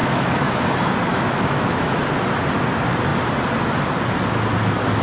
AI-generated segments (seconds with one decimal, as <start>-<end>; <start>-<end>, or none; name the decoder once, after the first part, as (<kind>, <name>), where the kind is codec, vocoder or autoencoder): 0.0-0.5 (autoencoder, DAC-VAE); 1.1-2.0